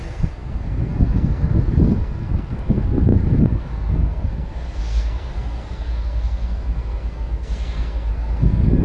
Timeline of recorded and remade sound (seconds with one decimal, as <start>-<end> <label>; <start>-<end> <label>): 0.0-8.8 remade